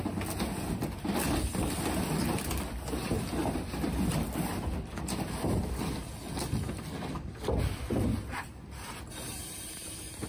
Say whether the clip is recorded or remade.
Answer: recorded